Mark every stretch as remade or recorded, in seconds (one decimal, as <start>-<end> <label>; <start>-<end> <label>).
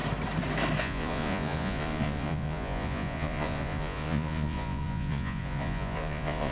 0.0-0.8 recorded; 0.8-6.5 remade